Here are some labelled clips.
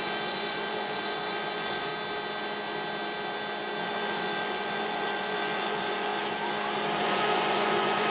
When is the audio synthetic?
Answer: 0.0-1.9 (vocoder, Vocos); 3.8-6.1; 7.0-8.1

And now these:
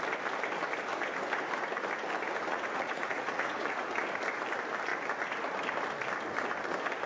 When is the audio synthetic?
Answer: 2.5-3.9 (vocoder, Vocos)

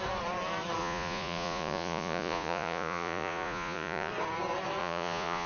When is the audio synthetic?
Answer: 0.8-4.1 (vocoder, Vocos); 4.8-5.5

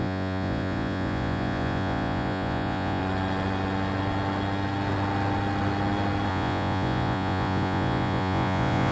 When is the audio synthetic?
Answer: 0.0-3.0 (vocoder, Vocos); 6.3-8.9